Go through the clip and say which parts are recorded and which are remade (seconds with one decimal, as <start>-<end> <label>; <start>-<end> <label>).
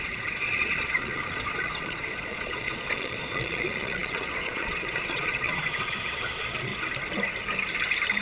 0.0-6.7 remade; 6.7-8.2 recorded